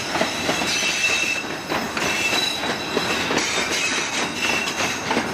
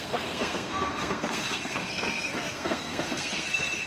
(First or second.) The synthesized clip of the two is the second